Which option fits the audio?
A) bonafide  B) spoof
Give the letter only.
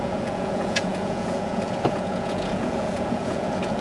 B